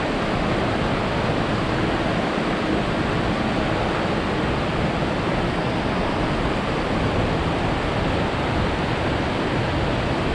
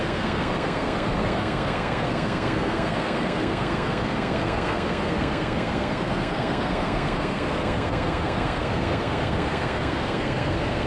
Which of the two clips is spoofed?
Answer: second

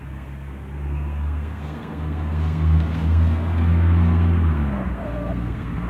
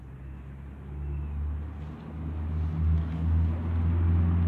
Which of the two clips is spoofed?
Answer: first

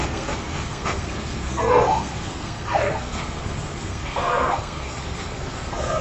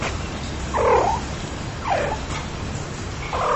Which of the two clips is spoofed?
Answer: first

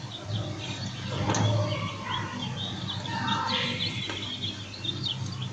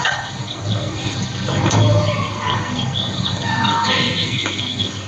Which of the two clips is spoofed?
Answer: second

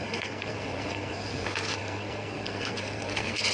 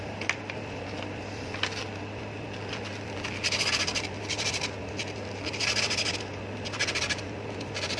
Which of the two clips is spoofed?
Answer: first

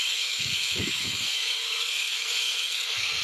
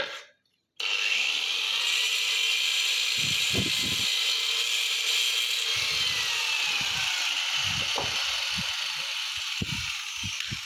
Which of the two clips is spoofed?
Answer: first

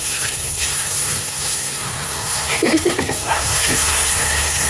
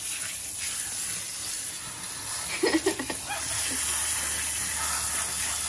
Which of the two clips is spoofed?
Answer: first